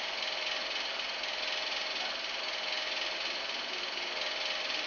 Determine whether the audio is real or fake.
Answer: real